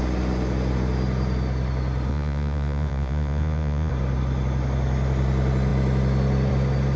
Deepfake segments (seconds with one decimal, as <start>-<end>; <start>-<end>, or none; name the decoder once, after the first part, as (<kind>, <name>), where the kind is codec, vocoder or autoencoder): 2.1-3.9 (vocoder, Vocos)